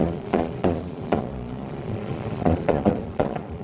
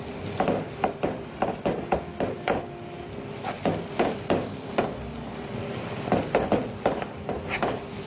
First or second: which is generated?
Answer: first